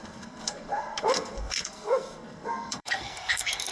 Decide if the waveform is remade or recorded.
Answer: remade